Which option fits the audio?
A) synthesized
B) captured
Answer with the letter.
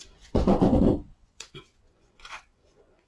A